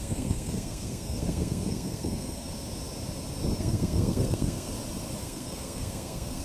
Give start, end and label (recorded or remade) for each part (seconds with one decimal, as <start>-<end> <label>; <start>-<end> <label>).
0.0-2.5 remade; 2.5-3.6 recorded; 3.6-4.7 remade; 4.7-5.2 recorded; 5.2-6.4 remade